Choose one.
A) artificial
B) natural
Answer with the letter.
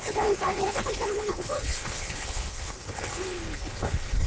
A